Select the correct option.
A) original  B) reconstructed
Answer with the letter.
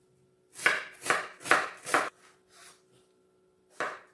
A